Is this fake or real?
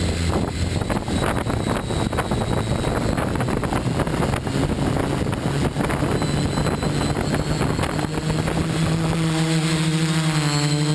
real